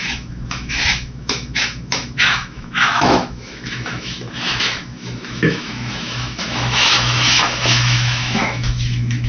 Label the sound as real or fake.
fake